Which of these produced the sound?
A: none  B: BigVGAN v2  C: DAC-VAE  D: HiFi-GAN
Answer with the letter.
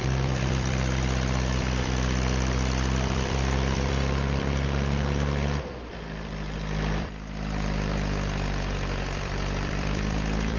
B